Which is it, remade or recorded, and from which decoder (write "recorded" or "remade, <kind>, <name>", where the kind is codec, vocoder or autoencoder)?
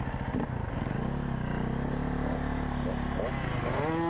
recorded